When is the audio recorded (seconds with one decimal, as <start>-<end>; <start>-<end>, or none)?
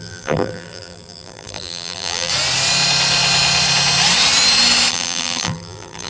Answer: 2.3-4.9